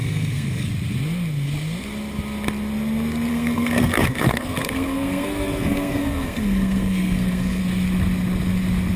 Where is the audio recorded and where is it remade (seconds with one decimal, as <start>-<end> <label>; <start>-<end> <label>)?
0.0-0.7 remade; 0.7-3.3 recorded; 3.3-7.6 remade; 7.6-9.0 recorded

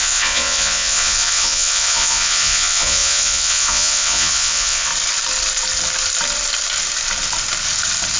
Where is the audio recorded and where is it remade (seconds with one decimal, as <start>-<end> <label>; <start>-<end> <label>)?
0.0-4.9 remade; 4.9-8.2 recorded

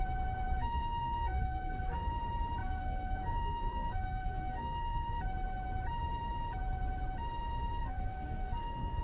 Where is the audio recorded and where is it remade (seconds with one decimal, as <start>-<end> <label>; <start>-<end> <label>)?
0.0-0.6 recorded; 0.6-2.1 remade; 2.1-2.6 recorded; 2.6-5.2 remade; 5.2-7.8 recorded; 7.8-9.0 remade

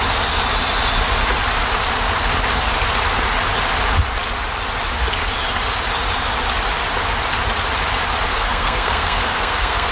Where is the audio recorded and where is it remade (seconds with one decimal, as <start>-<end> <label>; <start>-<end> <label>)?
0.0-8.3 recorded; 8.3-9.9 remade